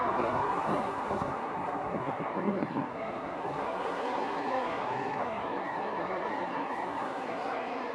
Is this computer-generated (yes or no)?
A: yes